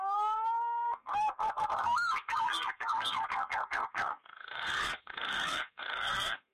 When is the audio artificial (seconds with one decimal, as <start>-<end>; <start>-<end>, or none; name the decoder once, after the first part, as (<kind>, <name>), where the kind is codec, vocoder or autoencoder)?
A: 0.0-6.5 (codec, SNAC)

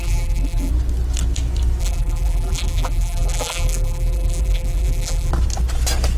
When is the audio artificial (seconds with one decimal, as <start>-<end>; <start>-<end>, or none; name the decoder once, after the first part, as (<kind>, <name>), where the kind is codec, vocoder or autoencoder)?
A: 0.0-0.7 (vocoder, BigVGAN v2); 1.8-5.3

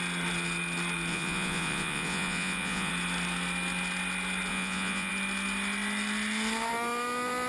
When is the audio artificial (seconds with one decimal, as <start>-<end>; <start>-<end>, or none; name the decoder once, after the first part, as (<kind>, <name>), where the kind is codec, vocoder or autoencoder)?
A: 1.1-2.9 (vocoder, Vocos); 4.5-5.1

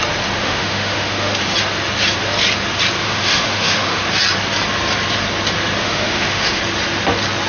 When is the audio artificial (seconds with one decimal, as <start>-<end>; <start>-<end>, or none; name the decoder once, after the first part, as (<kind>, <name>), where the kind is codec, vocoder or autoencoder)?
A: 0.4-1.4 (autoencoder, DAC-VAE); 3.0-4.0; 5.8-6.6

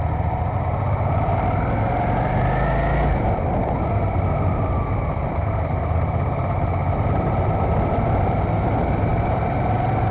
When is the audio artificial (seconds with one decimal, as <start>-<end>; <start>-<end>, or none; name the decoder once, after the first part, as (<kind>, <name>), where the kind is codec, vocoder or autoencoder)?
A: none

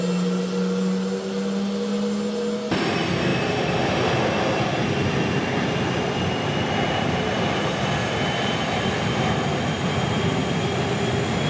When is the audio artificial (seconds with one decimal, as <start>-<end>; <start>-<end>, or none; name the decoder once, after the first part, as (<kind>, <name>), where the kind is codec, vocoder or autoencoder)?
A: none